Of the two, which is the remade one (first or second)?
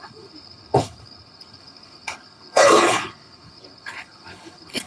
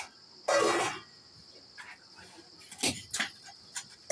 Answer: first